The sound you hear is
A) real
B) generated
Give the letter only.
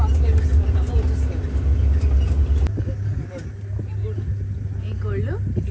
A